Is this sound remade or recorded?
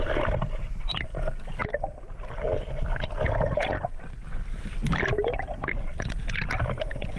recorded